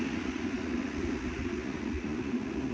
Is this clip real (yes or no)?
no